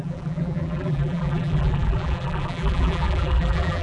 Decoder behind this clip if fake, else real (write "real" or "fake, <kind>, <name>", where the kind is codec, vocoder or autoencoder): fake, vocoder, BigVGAN v2